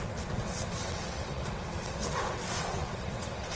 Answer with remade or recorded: remade